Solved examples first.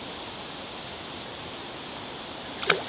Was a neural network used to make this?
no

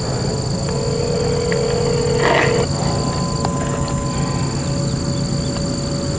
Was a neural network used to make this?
no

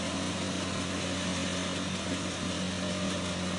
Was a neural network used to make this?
no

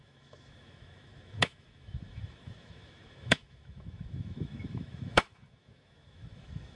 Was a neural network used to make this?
yes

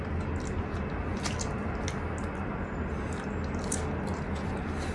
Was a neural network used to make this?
no